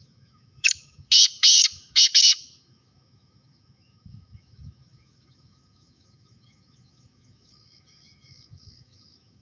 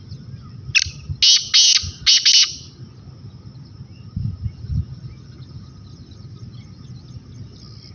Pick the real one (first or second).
second